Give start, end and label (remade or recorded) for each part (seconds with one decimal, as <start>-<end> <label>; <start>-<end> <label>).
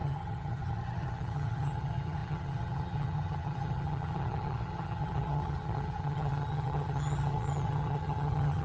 0.0-8.6 remade